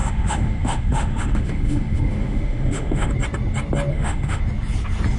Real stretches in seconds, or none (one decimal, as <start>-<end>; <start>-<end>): 3.1-3.9; 4.4-5.2